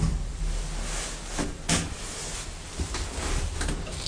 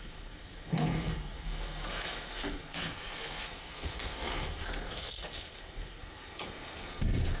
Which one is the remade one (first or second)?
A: second